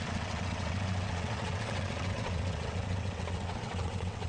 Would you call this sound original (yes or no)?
no